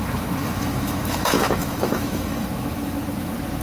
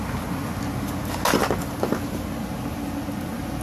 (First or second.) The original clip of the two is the second